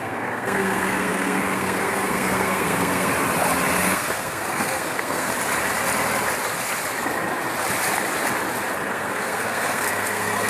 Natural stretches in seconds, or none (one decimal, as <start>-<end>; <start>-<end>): 3.1-3.8; 5.3-8.9